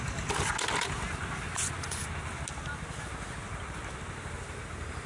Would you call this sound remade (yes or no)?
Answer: no